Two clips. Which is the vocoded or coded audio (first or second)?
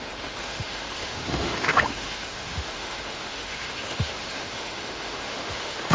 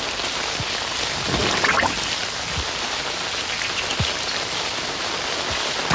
first